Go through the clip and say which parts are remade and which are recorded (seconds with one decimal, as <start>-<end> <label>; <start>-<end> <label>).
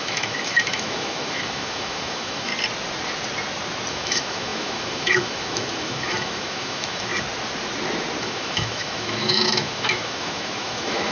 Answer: 0.0-2.5 remade; 2.5-3.9 recorded; 3.9-7.1 remade; 7.1-8.2 recorded; 8.2-11.1 remade